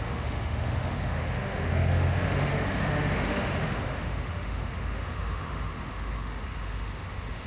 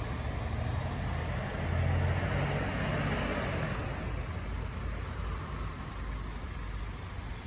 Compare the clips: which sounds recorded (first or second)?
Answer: second